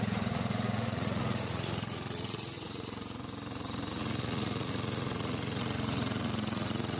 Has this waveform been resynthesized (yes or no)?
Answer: yes